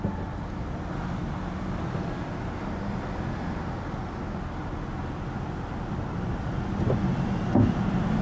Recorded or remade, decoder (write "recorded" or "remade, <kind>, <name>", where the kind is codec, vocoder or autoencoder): recorded